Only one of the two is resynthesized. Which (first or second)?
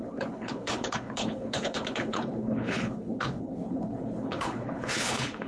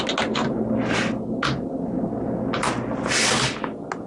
first